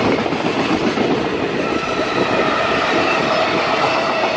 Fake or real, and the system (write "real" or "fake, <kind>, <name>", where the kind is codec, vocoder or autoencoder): real